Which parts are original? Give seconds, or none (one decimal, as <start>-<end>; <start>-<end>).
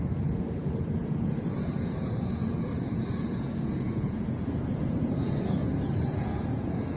none